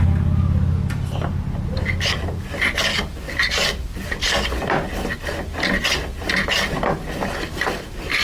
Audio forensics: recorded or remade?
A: recorded